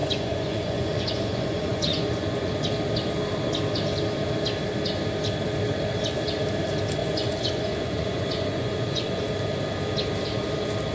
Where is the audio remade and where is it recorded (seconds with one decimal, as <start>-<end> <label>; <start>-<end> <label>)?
0.0-2.6 remade; 2.6-7.0 recorded; 7.0-9.2 remade; 9.2-10.9 recorded